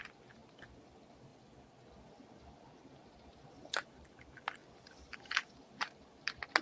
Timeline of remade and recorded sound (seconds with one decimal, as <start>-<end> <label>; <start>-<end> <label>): 0.0-1.3 recorded; 1.3-1.8 remade; 1.8-4.6 recorded; 4.6-5.5 remade; 5.5-6.6 recorded